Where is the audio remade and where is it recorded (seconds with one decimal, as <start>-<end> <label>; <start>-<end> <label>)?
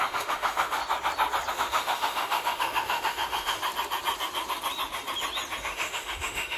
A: 0.0-0.8 remade; 0.8-1.5 recorded; 1.5-3.6 remade; 3.6-5.6 recorded; 5.6-6.6 remade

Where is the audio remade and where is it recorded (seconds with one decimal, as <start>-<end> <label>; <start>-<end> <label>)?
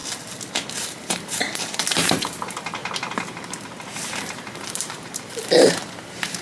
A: 0.0-0.7 recorded; 0.7-2.8 remade; 2.8-4.7 recorded; 4.7-6.4 remade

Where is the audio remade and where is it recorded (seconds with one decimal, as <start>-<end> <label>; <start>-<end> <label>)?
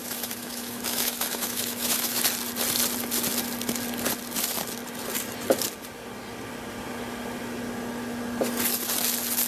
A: 0.0-2.2 remade; 2.2-9.5 recorded